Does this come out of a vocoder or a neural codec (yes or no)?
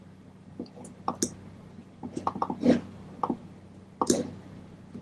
no